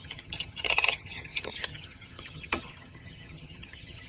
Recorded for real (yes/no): no